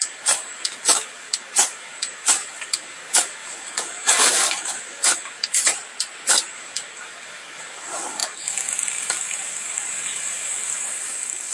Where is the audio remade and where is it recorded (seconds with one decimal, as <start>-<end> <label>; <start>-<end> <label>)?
0.0-5.6 remade; 5.6-6.5 recorded; 6.5-11.5 remade